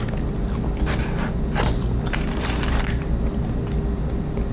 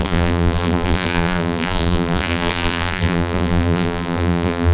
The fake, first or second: second